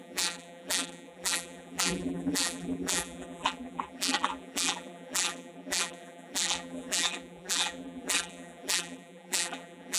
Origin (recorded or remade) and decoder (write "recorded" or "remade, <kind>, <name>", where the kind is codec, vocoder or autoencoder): remade, vocoder, BigVGAN v2